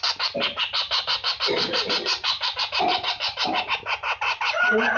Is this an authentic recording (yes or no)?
no